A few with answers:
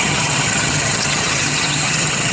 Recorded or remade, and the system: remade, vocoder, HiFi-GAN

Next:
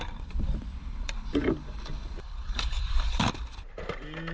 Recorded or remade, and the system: remade, vocoder, BigVGAN v2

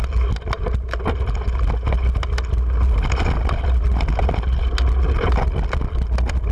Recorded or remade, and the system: recorded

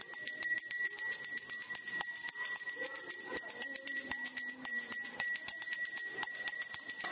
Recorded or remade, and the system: recorded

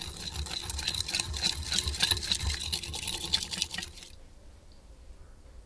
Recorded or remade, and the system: recorded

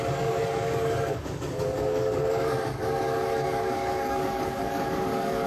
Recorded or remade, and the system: remade, codec, DAC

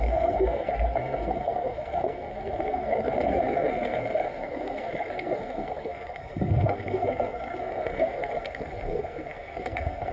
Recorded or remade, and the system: remade, codec, SNAC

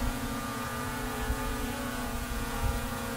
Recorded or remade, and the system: remade, vocoder, Vocos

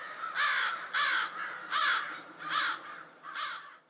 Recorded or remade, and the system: recorded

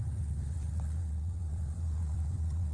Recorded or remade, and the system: remade, vocoder, WaveNeXt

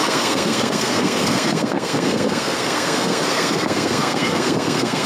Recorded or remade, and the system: remade, codec, SNAC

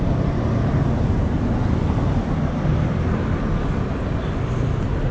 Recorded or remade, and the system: recorded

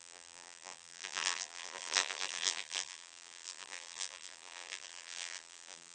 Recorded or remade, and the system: remade, vocoder, BigVGAN v2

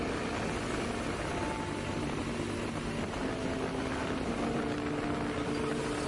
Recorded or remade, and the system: recorded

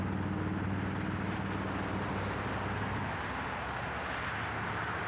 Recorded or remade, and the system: recorded